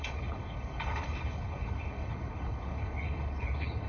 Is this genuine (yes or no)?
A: no